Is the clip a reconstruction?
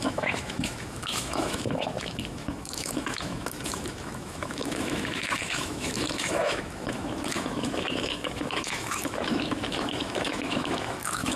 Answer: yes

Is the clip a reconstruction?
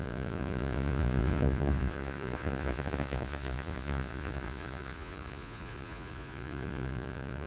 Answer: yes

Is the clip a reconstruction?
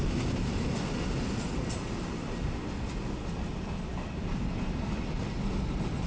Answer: no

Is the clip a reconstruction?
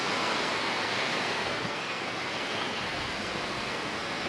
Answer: yes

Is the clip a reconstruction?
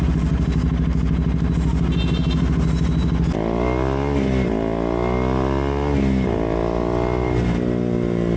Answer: no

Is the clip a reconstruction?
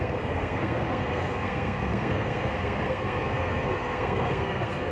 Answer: yes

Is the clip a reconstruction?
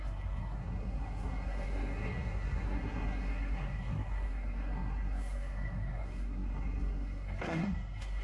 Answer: yes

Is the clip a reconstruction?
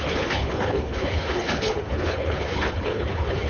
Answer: yes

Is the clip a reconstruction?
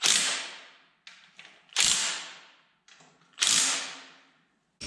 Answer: no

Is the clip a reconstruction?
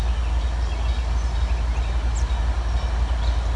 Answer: no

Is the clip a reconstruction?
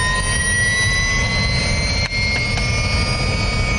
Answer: no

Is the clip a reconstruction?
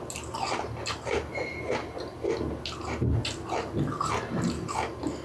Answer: no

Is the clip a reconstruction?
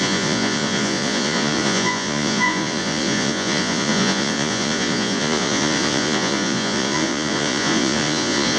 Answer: yes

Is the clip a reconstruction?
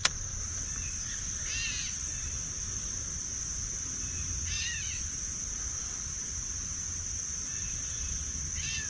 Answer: no